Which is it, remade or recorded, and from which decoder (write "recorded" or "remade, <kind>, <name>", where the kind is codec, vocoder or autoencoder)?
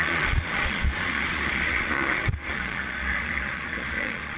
remade, vocoder, Vocos